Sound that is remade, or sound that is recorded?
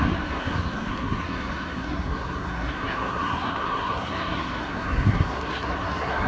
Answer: remade